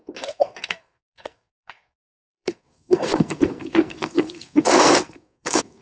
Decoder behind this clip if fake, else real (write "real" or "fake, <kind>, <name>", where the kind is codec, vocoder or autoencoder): fake, codec, SNAC